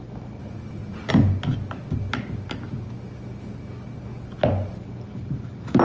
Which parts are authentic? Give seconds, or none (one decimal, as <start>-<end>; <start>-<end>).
0.0-0.4; 1.1-5.8